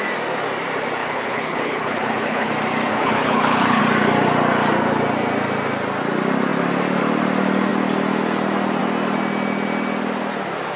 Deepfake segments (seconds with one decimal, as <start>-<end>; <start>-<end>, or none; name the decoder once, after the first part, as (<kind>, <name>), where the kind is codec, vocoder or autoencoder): 1.0-2.5 (codec, HILCodec); 2.9-3.8